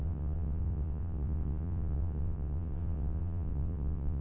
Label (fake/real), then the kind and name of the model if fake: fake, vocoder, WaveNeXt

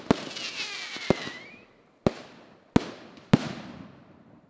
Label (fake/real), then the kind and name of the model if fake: real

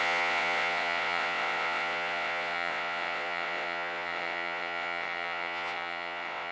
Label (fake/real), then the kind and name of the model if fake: fake, vocoder, WaveNeXt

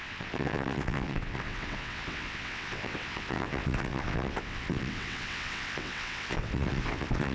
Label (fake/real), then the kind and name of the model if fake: fake, vocoder, WaveNeXt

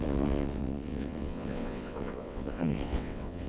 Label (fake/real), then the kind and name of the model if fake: fake, vocoder, WaveNeXt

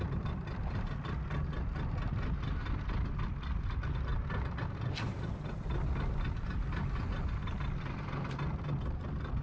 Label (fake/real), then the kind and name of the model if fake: real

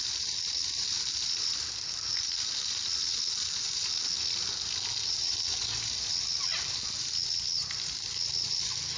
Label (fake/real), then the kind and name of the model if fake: real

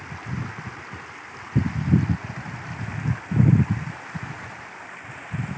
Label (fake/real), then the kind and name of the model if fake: real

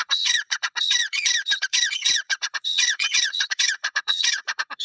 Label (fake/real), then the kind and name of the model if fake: fake, vocoder, WaveNeXt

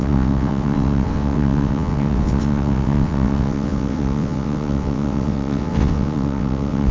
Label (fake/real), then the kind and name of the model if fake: fake, vocoder, WaveNeXt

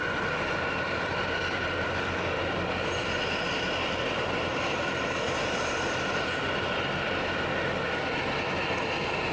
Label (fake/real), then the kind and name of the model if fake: real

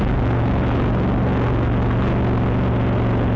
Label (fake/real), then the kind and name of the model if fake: real